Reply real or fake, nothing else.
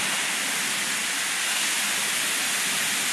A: real